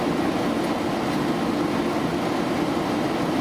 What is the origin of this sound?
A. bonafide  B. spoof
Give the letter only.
A